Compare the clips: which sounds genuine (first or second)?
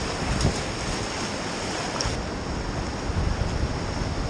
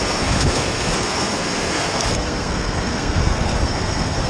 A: first